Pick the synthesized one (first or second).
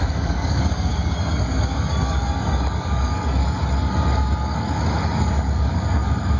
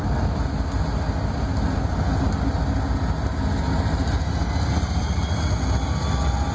first